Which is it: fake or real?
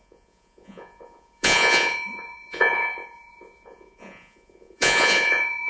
fake